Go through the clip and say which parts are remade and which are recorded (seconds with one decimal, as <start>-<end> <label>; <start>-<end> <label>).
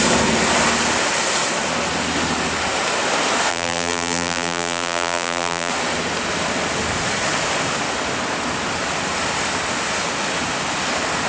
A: 0.0-3.5 recorded; 3.5-5.7 remade; 5.7-11.3 recorded